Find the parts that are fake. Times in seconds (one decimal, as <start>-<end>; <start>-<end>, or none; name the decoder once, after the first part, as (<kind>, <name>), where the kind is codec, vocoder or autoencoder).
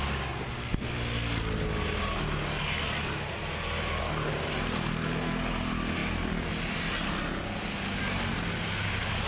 none